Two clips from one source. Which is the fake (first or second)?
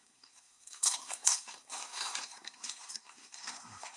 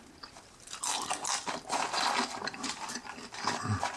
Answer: first